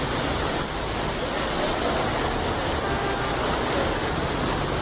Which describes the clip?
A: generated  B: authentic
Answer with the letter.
B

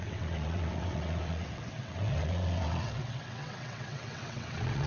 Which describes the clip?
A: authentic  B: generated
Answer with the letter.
B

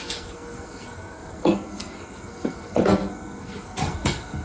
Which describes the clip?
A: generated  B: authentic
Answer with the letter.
A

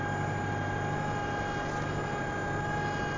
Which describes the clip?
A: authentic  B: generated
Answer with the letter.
A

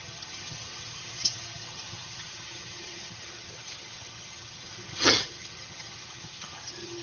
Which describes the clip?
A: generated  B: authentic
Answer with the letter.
A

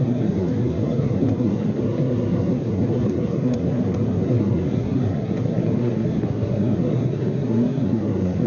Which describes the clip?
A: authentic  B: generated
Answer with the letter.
B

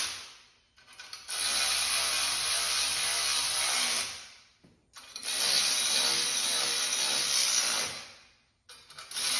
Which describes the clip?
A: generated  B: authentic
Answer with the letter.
B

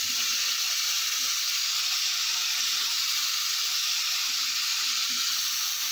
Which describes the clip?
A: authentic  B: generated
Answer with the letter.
A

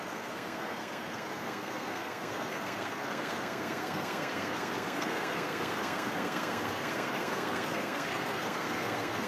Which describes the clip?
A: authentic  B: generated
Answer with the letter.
B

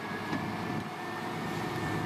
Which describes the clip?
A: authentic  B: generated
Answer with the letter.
A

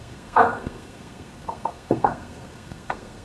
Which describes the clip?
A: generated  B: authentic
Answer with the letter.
A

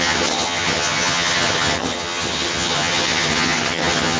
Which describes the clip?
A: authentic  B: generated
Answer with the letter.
B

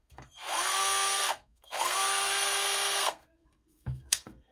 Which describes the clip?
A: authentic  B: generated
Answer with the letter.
B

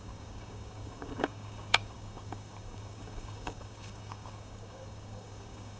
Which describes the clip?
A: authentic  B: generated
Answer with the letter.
B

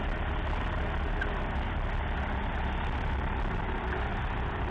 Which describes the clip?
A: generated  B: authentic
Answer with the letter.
B